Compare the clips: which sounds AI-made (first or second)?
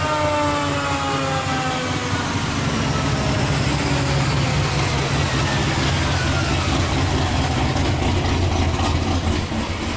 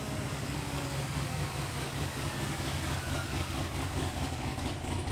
second